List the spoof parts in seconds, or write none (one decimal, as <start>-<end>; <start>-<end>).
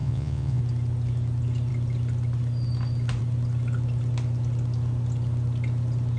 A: 0.0-0.6